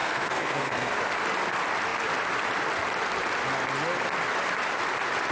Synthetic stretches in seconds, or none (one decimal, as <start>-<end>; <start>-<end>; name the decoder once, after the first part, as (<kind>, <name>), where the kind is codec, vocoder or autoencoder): 0.0-0.9 (codec, SNAC)